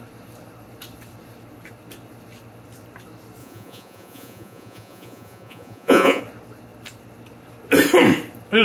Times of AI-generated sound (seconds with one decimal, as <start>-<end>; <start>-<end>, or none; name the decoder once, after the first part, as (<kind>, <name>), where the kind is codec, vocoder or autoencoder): 3.4-6.2 (vocoder, Vocos)